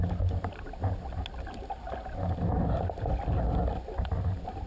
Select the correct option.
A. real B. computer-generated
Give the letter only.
A